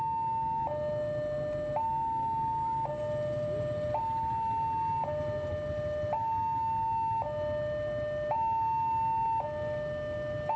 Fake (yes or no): no